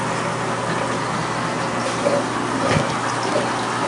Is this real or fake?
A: real